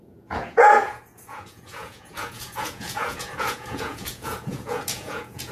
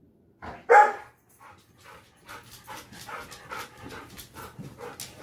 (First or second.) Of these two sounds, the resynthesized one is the first